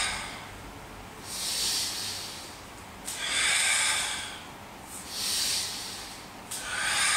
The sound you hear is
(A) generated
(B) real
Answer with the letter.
B